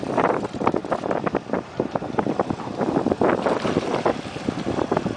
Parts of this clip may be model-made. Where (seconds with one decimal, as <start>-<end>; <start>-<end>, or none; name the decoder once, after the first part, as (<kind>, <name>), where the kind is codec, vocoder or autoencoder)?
none